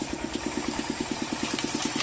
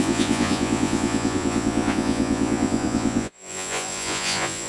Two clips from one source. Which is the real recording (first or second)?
first